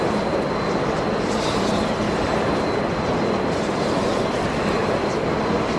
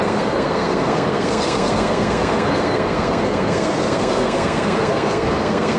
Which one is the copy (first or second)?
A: second